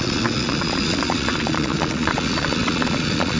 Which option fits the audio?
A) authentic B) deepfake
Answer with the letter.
B